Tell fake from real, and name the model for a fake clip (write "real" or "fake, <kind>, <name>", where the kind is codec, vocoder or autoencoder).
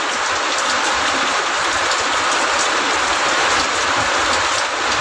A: real